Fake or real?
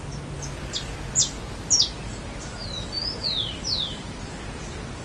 real